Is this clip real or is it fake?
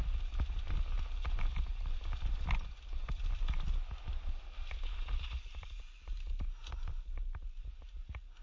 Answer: real